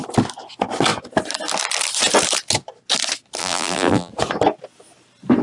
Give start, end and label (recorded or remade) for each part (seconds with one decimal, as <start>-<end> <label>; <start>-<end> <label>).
0.0-3.4 recorded; 3.4-4.1 remade; 4.1-5.4 recorded

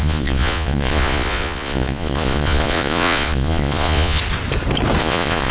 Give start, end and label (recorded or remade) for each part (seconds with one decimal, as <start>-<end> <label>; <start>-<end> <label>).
0.0-4.2 remade; 4.2-5.0 recorded; 5.0-5.5 remade

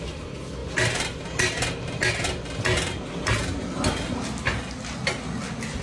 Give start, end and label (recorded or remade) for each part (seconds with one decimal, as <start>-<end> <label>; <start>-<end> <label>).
0.0-5.8 recorded

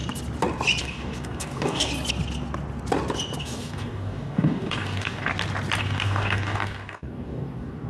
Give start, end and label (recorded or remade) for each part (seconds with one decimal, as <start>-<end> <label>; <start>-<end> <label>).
0.0-0.8 recorded; 0.8-1.9 remade; 1.9-3.4 recorded; 3.4-5.3 remade; 5.3-5.8 recorded; 5.8-7.9 remade

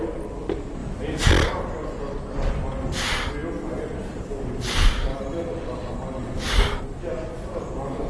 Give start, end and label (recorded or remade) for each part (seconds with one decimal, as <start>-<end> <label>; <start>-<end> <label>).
0.0-8.1 recorded

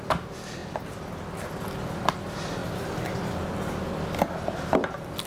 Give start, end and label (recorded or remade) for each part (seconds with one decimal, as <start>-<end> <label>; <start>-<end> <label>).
0.0-5.3 recorded

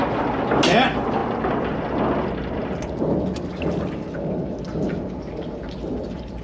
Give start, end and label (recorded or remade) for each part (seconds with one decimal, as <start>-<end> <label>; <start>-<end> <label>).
0.0-6.4 recorded

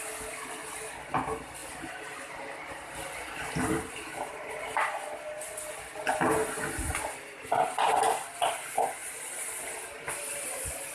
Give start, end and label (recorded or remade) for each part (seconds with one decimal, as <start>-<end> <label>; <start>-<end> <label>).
0.0-9.0 recorded; 9.0-10.5 remade; 10.5-10.9 recorded